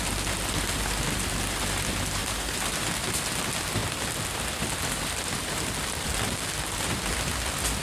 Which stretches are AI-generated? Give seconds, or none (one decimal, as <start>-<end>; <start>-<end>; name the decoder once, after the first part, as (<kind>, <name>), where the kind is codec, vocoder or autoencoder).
2.2-2.7 (vocoder, BigVGAN v2)